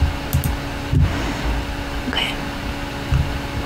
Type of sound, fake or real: real